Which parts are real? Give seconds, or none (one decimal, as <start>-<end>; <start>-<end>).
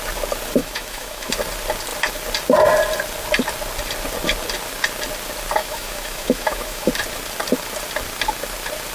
0.0-0.6; 1.3-5.6; 6.9-8.9